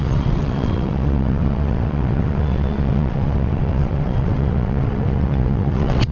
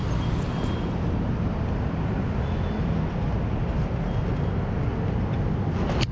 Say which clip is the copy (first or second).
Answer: first